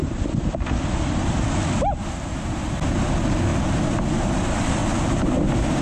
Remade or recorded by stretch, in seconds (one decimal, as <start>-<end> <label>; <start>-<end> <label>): 0.0-5.8 recorded